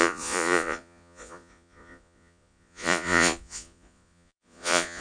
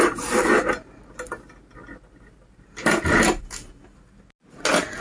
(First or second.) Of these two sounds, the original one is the second